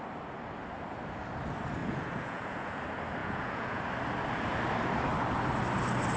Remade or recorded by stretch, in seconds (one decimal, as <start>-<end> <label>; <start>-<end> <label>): 0.0-1.8 recorded; 1.8-2.8 remade; 2.8-3.2 recorded; 3.2-3.8 remade; 3.8-6.2 recorded